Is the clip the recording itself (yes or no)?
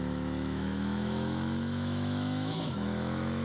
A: no